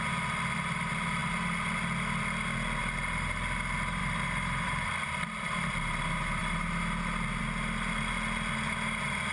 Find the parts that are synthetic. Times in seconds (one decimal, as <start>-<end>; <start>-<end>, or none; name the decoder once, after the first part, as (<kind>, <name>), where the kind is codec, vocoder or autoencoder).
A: 4.0-4.9 (vocoder, BigVGAN v2)